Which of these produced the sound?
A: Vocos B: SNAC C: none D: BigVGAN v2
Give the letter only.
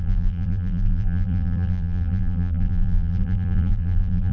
D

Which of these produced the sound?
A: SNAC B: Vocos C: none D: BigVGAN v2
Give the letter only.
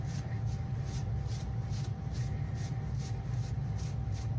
C